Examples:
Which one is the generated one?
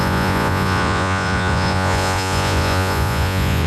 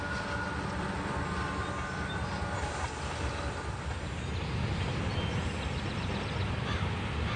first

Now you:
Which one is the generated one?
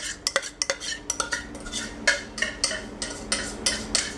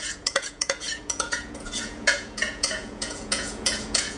second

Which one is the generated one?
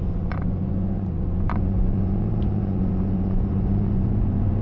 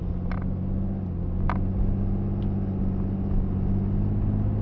first